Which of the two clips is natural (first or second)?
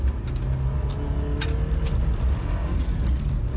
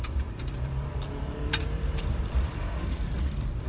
first